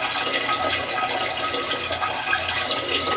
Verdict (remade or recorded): recorded